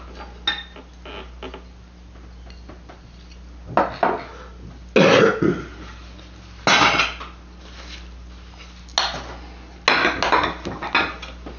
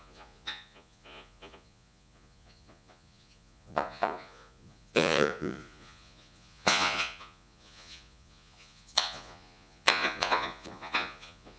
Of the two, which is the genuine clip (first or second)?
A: first